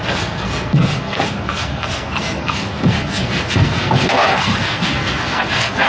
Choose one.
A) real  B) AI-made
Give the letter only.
B